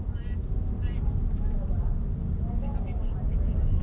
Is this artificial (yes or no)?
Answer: no